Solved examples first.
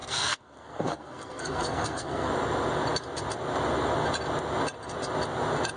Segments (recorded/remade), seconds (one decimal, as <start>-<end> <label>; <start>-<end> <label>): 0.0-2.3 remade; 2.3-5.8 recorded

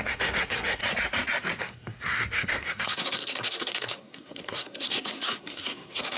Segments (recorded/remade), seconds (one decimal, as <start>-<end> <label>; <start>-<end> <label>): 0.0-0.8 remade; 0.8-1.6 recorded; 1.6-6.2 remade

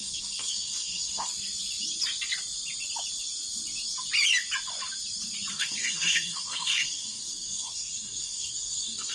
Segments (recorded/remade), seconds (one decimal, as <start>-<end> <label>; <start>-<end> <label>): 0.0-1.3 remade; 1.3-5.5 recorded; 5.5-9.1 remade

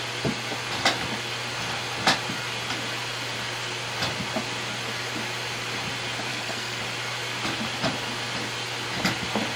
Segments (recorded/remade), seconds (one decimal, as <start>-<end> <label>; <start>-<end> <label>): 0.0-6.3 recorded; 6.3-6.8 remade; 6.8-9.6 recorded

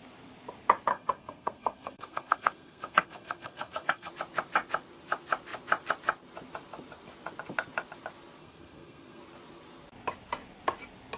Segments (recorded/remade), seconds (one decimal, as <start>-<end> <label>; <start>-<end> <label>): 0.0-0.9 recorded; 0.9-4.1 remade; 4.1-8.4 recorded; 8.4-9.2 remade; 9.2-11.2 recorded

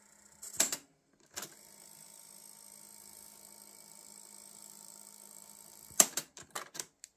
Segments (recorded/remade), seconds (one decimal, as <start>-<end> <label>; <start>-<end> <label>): 0.0-7.2 recorded

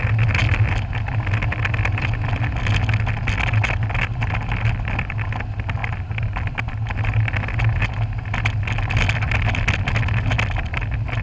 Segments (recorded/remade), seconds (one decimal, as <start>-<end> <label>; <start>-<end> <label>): 0.0-11.2 recorded

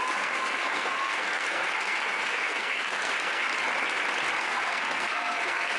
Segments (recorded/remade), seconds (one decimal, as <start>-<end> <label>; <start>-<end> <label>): 0.0-3.5 remade; 3.5-4.4 recorded; 4.4-5.8 remade